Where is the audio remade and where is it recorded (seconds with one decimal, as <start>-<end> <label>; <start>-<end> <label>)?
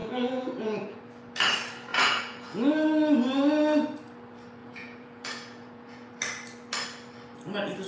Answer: 0.0-1.0 remade; 1.0-1.9 recorded; 1.9-2.7 remade; 2.7-4.6 recorded; 4.6-6.1 remade; 6.1-7.9 recorded